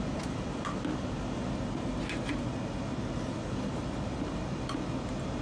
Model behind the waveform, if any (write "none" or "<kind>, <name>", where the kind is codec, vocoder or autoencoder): none